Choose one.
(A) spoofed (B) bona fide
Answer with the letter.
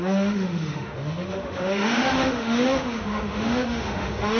A